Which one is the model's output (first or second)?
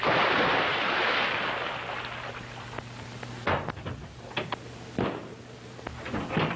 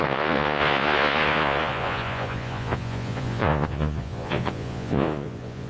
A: second